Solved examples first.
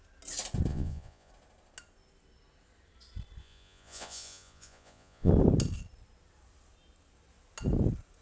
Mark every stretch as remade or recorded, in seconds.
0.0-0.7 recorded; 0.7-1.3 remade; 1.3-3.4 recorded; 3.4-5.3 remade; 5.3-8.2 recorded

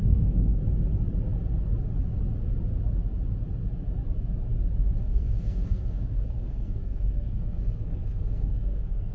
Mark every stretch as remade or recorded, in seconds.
0.0-0.6 remade; 0.6-5.0 recorded; 5.0-9.1 remade

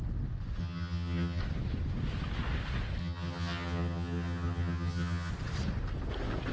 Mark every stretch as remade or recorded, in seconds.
0.0-0.6 recorded; 0.6-1.4 remade; 1.4-3.0 recorded; 3.0-5.3 remade; 5.3-6.5 recorded

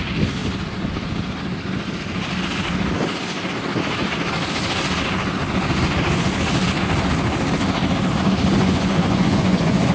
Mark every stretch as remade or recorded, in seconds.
0.0-8.6 recorded; 8.6-9.9 remade

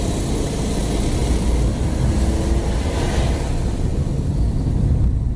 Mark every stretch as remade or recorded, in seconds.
0.0-3.9 recorded; 3.9-4.8 remade; 4.8-5.4 recorded

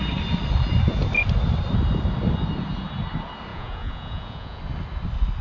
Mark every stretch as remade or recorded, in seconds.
0.0-3.5 recorded; 3.5-4.6 remade; 4.6-5.4 recorded

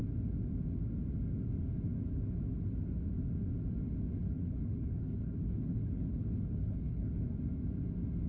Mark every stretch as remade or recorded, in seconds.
0.0-4.2 recorded; 4.2-7.1 remade; 7.1-8.3 recorded